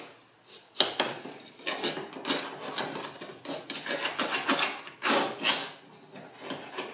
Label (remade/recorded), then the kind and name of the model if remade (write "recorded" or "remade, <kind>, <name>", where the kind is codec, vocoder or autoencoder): recorded